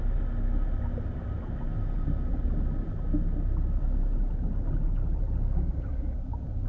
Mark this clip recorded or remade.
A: recorded